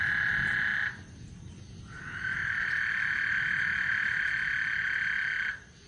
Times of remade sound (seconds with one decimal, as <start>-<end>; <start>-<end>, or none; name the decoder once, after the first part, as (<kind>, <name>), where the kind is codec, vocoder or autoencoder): 2.4-5.9 (vocoder, BigVGAN v2)